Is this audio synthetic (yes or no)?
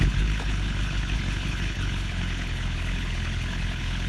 yes